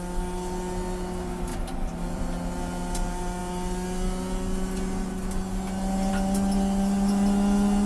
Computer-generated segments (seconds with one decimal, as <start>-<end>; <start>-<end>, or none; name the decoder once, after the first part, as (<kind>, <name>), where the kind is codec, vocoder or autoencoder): 1.5-2.2 (vocoder, BigVGAN v2)